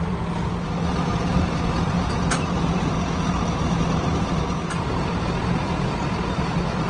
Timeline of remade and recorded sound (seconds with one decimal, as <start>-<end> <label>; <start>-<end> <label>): 0.0-6.9 recorded